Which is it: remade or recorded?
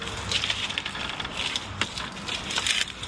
recorded